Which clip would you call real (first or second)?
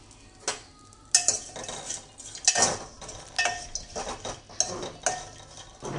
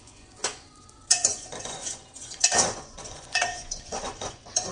first